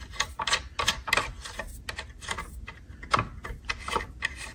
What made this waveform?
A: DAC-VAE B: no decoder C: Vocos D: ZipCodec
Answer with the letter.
B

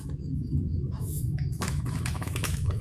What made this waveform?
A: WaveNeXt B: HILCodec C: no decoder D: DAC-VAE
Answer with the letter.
D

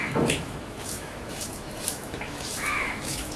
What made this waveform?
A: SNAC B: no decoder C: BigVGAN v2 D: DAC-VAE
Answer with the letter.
D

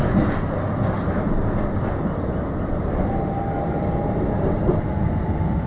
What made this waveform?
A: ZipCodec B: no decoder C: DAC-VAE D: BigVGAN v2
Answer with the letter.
B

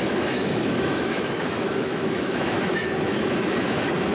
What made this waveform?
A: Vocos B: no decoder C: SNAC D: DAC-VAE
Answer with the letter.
D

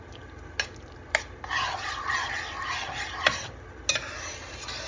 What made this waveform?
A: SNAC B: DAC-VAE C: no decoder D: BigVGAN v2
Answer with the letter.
C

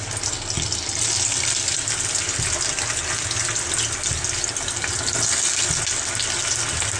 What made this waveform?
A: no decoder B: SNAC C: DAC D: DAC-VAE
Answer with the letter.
A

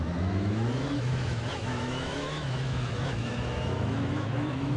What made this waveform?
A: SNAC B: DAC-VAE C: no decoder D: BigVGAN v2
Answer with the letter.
B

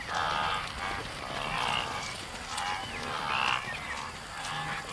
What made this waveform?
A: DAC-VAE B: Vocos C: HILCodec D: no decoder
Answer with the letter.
D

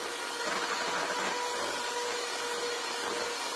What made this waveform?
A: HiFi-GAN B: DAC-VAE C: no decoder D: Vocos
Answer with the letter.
C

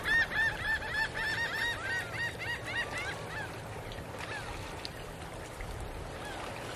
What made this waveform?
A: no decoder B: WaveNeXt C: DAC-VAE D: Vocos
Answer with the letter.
A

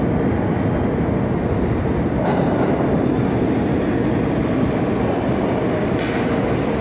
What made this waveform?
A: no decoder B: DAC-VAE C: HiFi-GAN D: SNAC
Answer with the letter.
A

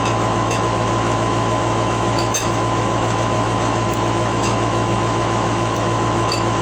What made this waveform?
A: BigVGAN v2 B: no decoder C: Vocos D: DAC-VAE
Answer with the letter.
D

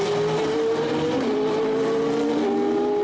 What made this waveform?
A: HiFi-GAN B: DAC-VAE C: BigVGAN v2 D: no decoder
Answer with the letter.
D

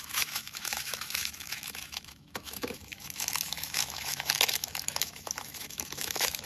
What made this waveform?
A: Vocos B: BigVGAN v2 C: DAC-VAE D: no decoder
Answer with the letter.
C